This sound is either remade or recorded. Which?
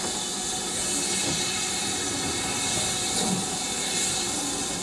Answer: recorded